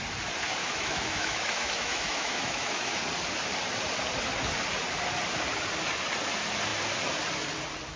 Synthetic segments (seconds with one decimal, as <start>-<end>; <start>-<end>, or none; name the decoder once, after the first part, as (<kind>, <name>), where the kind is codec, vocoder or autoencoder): 0.6-3.0 (autoencoder, DAC-VAE)